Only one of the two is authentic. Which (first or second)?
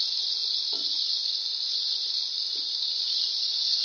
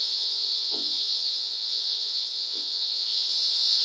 first